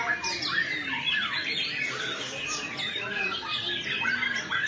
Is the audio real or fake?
real